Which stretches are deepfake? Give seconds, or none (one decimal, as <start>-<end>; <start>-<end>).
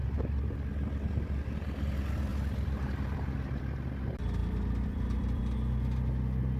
2.3-3.6; 4.4-5.4